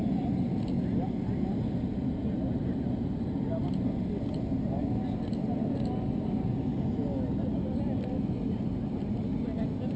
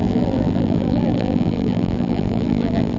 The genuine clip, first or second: first